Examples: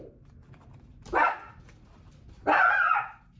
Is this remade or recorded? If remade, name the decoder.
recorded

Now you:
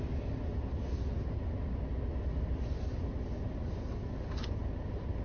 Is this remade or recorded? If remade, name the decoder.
recorded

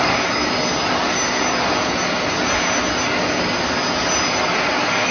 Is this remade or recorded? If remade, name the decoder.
recorded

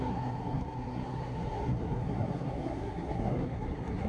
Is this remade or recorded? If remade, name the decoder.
remade, codec, SNAC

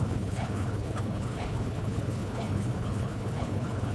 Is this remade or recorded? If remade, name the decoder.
remade, codec, HILCodec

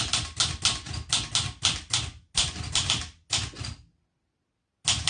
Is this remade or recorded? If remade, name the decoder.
recorded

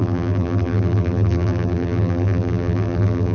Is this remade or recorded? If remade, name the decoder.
remade, vocoder, BigVGAN v2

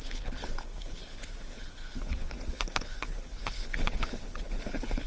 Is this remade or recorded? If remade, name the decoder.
remade, codec, HILCodec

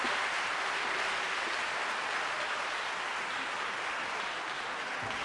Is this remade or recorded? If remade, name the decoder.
recorded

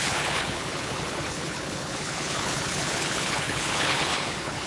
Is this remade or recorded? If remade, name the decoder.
remade, codec, HILCodec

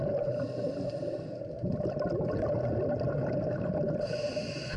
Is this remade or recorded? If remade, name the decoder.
recorded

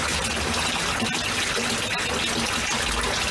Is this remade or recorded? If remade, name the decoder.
recorded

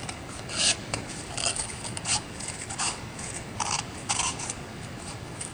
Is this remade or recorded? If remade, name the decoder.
remade, codec, DAC